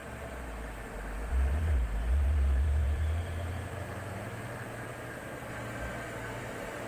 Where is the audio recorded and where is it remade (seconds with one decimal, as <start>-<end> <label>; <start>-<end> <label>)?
0.0-4.9 remade; 4.9-6.4 recorded; 6.4-6.9 remade